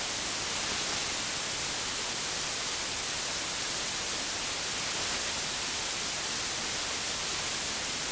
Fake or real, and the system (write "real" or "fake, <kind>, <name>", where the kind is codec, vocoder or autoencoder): real